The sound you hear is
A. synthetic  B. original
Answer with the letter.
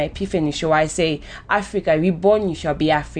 B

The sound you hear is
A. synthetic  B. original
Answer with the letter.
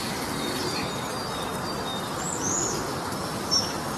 B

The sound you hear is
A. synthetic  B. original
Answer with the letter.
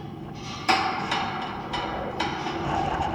A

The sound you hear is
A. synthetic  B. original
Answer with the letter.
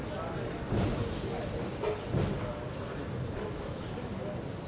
B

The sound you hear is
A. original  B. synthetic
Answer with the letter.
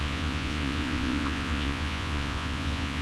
B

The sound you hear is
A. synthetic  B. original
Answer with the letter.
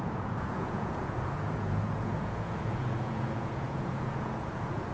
A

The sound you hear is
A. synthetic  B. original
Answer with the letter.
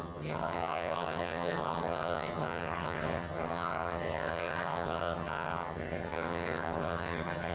A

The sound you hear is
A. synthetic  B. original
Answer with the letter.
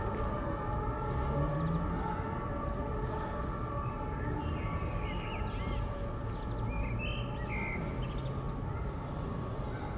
B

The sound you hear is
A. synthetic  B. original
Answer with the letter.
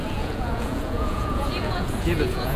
A